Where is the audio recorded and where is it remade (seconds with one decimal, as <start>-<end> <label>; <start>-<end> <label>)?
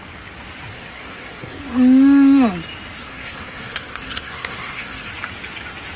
0.0-0.7 recorded; 0.7-1.6 remade; 1.6-3.0 recorded; 3.0-5.1 remade; 5.1-6.0 recorded